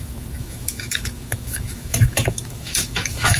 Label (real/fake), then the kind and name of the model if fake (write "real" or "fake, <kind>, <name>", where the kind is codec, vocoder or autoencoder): fake, autoencoder, DAC-VAE